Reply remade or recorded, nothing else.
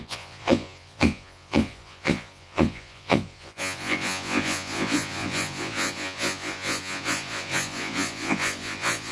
remade